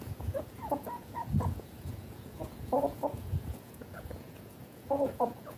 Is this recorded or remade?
remade